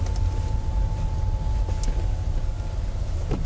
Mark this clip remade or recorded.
recorded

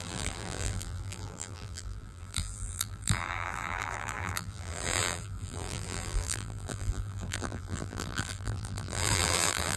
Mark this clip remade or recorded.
remade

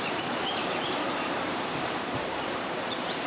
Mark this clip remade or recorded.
remade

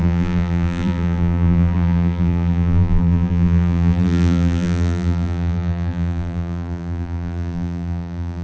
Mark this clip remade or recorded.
remade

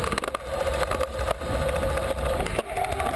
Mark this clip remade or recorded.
recorded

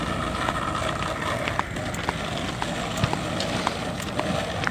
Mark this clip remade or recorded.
recorded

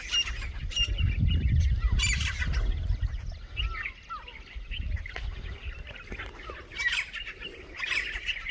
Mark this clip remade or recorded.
recorded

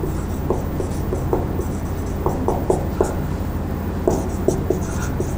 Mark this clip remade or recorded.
recorded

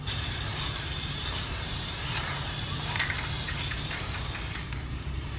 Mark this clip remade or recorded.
remade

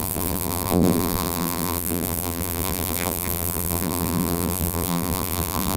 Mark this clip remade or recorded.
remade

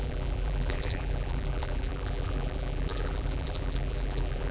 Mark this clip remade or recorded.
remade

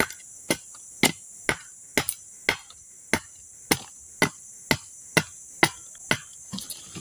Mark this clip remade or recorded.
recorded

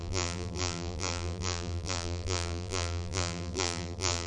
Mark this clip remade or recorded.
remade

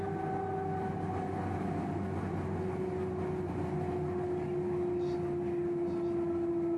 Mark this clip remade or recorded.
recorded